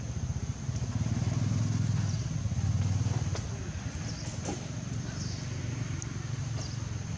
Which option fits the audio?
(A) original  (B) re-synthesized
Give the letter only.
A